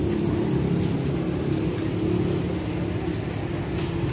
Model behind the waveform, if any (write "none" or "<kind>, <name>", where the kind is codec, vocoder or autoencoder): none